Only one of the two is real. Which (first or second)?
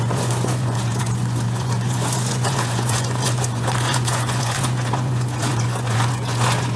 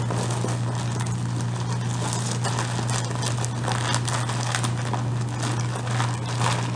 second